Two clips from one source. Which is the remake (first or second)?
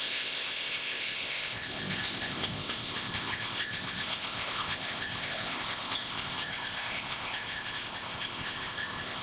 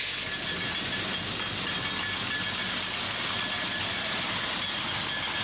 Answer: first